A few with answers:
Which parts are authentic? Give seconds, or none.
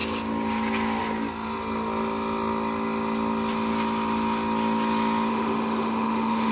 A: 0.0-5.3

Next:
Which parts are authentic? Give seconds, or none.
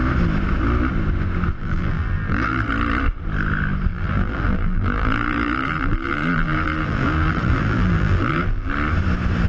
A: 0.0-1.6; 2.7-3.9; 8.7-9.5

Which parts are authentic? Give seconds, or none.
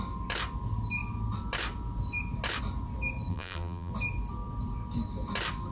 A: 0.0-3.3; 3.9-5.7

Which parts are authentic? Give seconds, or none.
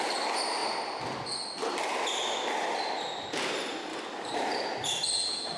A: 0.0-3.9; 4.4-5.6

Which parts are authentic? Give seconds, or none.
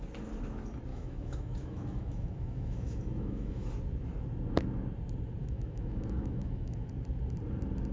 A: 0.0-0.9; 3.7-5.4; 6.9-7.9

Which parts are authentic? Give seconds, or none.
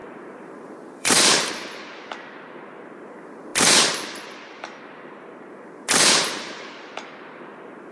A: 1.5-7.9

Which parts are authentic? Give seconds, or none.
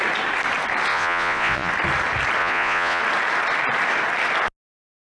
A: 0.0-0.9; 1.7-2.4; 3.0-5.2